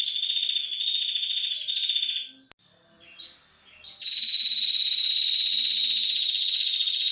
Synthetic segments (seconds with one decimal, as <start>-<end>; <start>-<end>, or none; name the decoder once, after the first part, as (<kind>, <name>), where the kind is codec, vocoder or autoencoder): 0.0-0.9 (vocoder, Vocos); 5.2-5.8; 6.3-7.1